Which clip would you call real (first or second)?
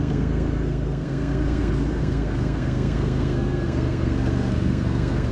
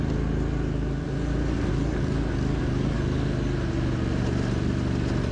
second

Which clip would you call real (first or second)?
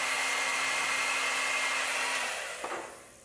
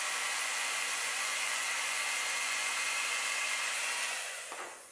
first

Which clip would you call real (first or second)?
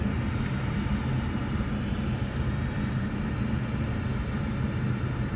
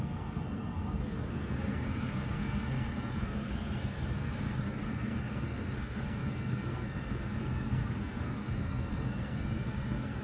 first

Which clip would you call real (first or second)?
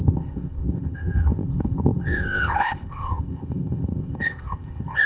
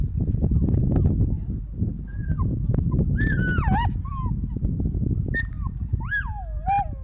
second